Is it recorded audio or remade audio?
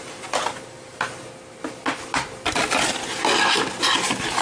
recorded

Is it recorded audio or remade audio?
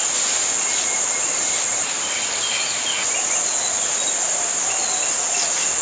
recorded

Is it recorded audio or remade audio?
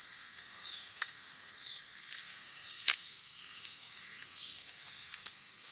remade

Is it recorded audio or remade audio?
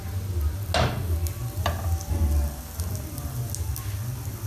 recorded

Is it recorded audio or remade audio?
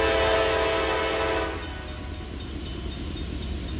recorded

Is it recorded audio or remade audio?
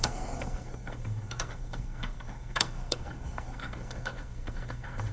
remade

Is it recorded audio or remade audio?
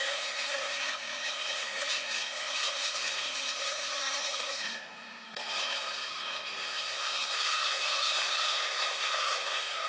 remade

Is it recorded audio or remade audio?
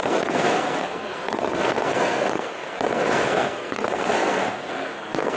remade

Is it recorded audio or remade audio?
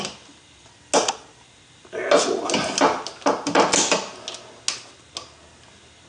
recorded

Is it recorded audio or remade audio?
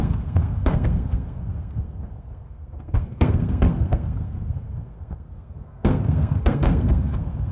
remade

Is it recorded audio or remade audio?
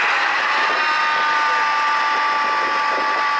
recorded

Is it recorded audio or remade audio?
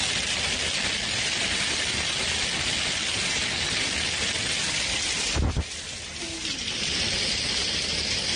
recorded